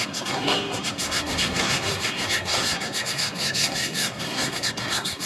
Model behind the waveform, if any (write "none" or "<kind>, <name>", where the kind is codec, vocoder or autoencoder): codec, SNAC